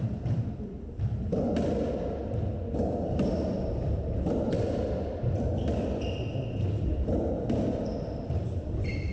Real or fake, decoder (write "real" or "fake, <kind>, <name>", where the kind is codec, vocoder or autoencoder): fake, vocoder, BigVGAN v2